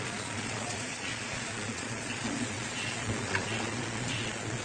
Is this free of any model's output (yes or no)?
no